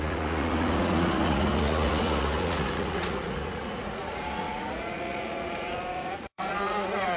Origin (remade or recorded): remade